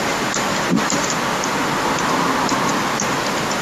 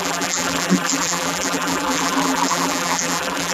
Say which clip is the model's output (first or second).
second